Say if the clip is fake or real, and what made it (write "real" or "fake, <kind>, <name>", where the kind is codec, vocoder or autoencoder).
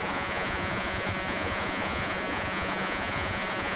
fake, vocoder, Vocos